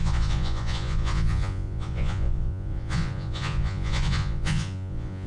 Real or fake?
fake